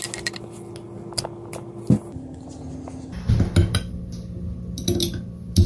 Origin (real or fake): real